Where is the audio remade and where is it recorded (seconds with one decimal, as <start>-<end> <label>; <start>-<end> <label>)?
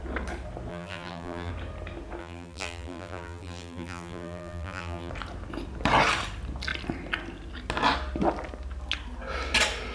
0.0-0.7 recorded; 0.7-1.5 remade; 1.5-2.2 recorded; 2.2-5.1 remade; 5.1-9.9 recorded